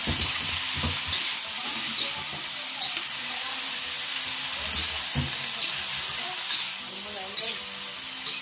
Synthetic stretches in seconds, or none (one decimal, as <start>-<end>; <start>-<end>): none

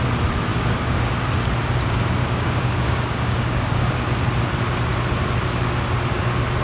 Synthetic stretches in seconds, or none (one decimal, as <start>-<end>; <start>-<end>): 0.5-1.1; 2.2-3.9

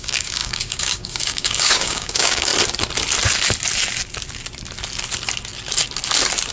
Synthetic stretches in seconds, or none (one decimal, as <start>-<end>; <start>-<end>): 0.0-2.5

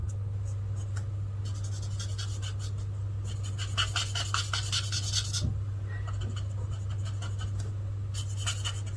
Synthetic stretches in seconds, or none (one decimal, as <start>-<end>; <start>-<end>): none

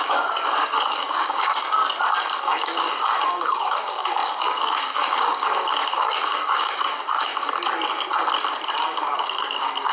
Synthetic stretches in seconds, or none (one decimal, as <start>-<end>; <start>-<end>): 0.0-1.8; 2.4-7.3; 8.7-9.9